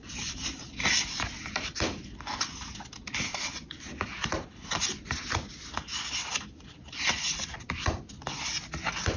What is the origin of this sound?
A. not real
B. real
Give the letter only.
B